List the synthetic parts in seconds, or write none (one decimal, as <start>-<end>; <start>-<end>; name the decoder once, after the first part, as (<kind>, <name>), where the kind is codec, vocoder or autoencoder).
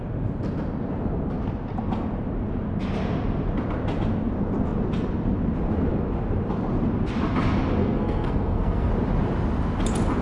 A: 7.8-8.9 (codec, SNAC)